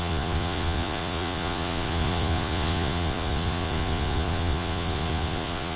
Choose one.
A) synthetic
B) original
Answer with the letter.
A